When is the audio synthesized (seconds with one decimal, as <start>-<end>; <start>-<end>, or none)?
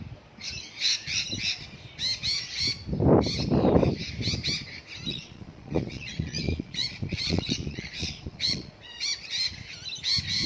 5.1-9.0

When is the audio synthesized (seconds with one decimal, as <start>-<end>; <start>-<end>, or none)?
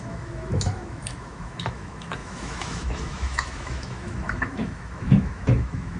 0.0-6.0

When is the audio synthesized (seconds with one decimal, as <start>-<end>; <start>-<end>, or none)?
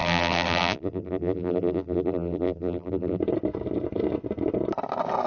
0.0-3.2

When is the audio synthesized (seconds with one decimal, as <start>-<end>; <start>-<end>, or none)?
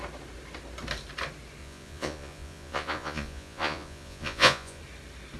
1.6-4.8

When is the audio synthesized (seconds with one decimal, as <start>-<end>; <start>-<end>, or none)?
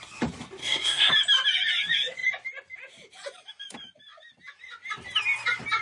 0.6-1.1